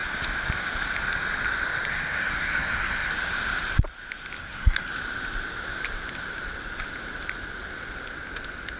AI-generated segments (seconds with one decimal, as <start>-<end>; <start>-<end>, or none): 1.9-3.1; 4.4-4.9